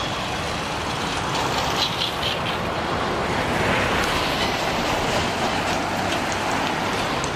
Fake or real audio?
real